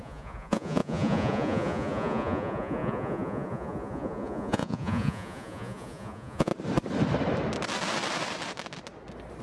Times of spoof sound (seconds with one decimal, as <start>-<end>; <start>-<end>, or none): 0.0-6.5